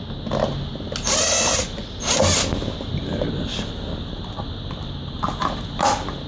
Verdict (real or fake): real